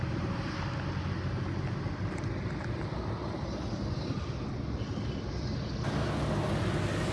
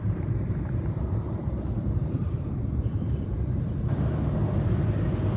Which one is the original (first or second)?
first